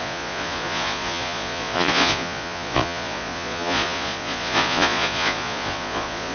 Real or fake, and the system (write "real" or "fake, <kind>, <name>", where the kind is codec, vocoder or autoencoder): fake, vocoder, Vocos